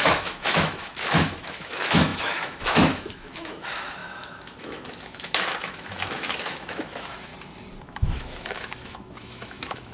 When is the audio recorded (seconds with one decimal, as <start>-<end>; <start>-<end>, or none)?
7.3-7.8